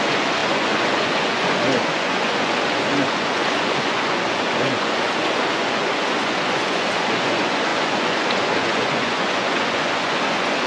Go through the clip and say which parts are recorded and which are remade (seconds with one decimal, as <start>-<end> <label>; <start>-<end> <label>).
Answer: 0.0-10.7 remade